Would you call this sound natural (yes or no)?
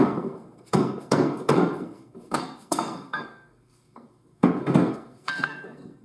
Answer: no